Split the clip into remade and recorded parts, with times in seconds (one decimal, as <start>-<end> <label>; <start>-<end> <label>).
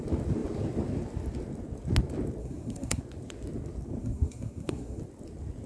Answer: 0.0-2.4 recorded; 2.4-3.0 remade; 3.0-4.0 recorded; 4.0-5.0 remade; 5.0-5.7 recorded